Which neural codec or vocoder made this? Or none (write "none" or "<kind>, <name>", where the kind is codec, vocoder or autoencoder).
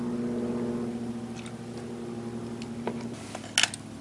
none